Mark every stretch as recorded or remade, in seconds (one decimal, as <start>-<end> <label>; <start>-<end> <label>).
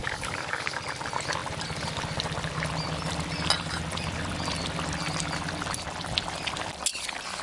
0.0-0.8 remade; 0.8-7.4 recorded